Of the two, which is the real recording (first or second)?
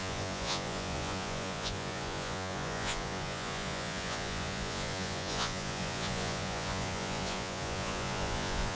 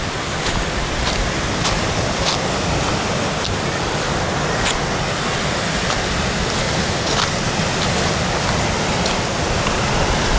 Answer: second